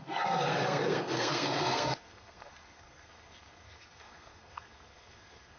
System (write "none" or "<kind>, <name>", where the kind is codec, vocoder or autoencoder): codec, SNAC